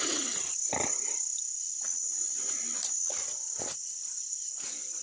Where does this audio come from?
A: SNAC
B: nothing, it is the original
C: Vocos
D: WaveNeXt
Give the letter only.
B